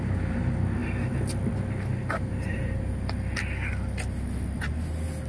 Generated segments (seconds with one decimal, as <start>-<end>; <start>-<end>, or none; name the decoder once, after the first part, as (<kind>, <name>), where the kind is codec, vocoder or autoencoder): 2.0-2.8 (vocoder, BigVGAN v2)